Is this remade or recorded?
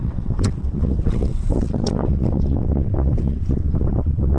remade